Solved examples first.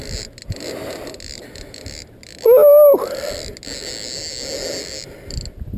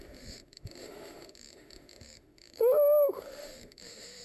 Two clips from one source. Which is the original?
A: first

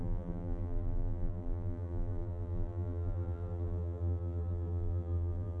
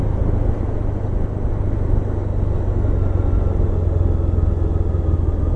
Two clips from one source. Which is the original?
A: second